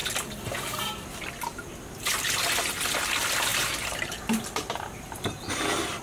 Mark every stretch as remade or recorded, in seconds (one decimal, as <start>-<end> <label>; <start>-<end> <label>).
0.0-3.5 recorded; 3.5-5.4 remade; 5.4-6.0 recorded